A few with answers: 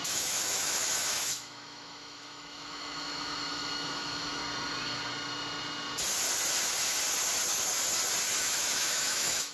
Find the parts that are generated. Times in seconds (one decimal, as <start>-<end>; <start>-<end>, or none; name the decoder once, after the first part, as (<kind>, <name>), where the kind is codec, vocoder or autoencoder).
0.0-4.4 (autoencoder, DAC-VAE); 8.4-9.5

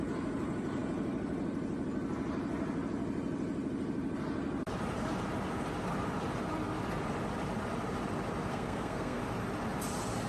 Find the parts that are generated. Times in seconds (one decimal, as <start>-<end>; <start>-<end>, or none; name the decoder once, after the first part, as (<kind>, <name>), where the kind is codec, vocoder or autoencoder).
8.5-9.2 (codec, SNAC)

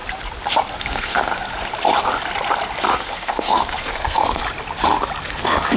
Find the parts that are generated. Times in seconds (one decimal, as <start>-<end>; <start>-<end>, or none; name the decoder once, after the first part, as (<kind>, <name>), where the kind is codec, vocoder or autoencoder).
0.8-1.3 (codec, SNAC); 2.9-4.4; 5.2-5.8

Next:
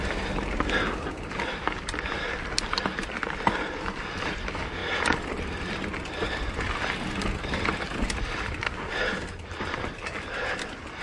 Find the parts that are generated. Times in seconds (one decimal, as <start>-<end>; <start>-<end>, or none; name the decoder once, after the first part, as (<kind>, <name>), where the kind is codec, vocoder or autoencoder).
9.1-9.6 (vocoder, BigVGAN v2)

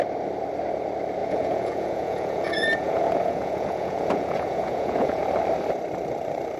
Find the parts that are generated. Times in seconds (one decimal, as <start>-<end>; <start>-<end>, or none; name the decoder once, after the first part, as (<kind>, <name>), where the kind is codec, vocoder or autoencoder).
1.2-5.2 (vocoder, Vocos)